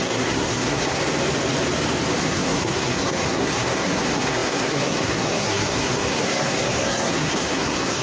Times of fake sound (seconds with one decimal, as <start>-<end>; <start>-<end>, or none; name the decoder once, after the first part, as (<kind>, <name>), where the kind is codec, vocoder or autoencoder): 0.0-1.0 (codec, SNAC); 2.2-8.0